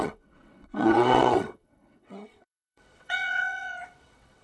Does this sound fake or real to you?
fake